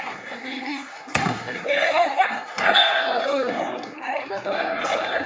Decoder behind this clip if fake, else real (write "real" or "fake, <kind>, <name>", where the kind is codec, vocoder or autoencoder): fake, codec, SNAC